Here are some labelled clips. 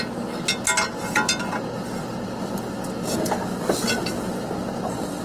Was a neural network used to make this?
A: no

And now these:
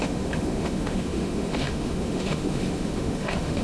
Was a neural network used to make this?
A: yes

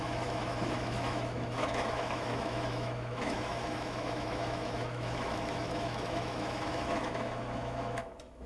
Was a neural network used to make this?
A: yes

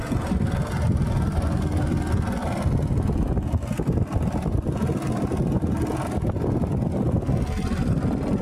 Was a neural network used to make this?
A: no